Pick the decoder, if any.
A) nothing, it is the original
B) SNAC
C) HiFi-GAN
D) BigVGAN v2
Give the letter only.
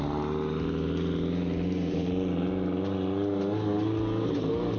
A